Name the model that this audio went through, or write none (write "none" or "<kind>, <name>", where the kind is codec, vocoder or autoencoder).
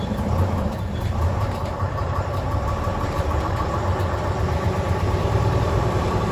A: vocoder, BigVGAN v2